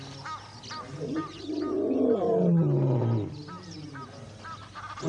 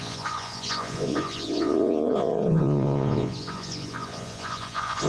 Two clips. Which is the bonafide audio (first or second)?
first